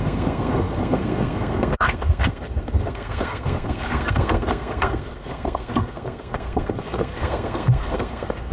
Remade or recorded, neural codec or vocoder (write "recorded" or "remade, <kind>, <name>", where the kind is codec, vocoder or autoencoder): remade, codec, SNAC